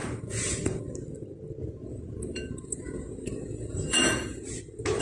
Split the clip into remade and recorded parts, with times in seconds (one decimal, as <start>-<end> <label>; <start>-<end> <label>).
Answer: 0.0-0.8 remade; 0.8-1.6 recorded; 1.6-4.6 remade; 4.6-5.0 recorded